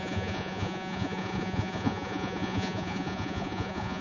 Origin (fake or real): fake